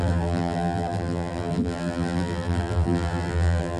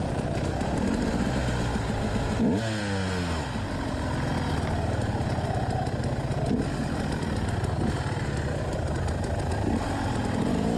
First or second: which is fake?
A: first